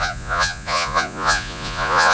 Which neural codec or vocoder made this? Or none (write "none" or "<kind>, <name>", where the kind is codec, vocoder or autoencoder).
vocoder, Vocos